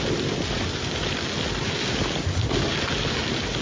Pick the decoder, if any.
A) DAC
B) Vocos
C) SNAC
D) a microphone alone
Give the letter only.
D